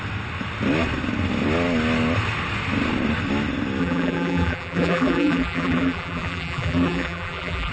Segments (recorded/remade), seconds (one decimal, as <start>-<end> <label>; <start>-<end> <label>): 0.0-3.8 recorded; 3.8-7.7 remade